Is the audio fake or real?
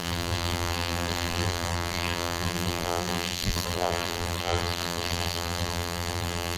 fake